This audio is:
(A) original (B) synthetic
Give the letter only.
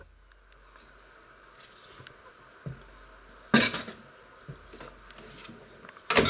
A